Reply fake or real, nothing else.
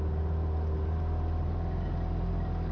real